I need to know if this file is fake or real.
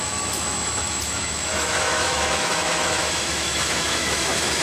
fake